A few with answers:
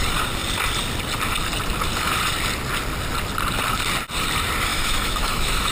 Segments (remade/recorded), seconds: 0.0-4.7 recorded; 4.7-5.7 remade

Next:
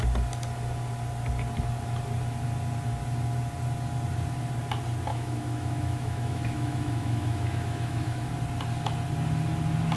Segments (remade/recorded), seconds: 0.0-5.1 recorded; 5.1-8.3 remade; 8.3-10.0 recorded

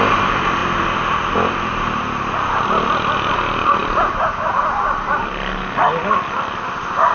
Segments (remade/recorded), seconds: 0.0-7.1 recorded

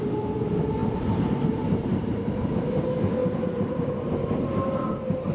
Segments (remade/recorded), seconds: 0.0-0.8 recorded; 0.8-2.2 remade; 2.2-3.2 recorded; 3.2-4.0 remade; 4.0-5.3 recorded

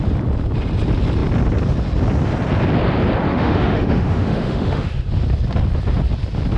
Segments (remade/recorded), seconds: 0.0-3.3 recorded; 3.3-5.1 remade; 5.1-6.6 recorded

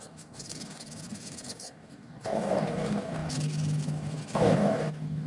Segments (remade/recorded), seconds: 0.0-5.3 remade